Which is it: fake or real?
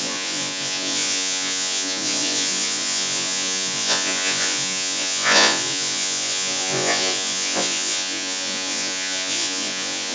fake